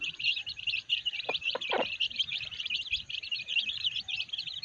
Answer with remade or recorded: remade